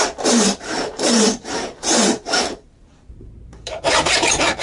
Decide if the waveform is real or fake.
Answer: fake